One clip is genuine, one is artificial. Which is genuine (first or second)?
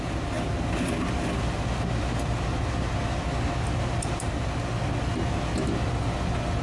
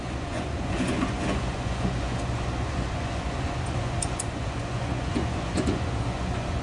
first